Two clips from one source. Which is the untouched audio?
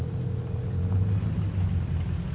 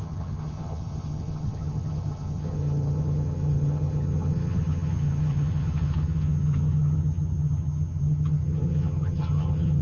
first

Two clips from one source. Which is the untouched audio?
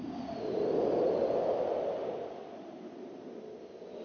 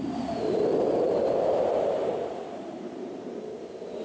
first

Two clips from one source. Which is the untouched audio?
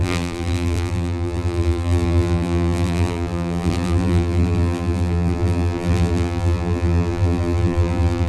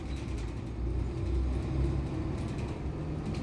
second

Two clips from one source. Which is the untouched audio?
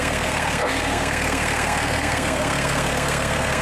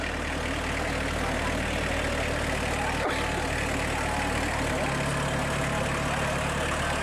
second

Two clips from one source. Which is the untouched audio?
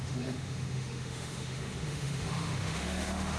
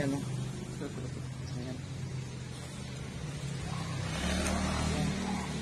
second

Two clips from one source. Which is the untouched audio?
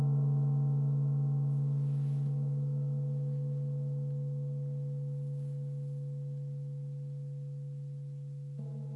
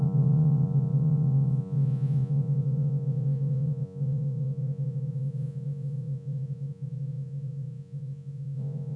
first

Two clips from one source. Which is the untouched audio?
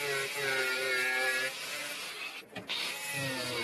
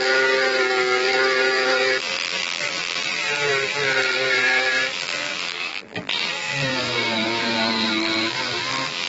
first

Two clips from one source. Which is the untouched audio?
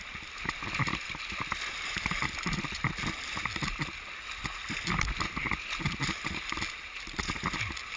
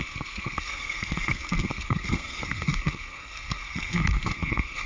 first